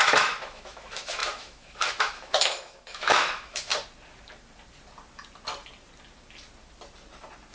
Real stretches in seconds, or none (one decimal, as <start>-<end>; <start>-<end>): 3.7-7.5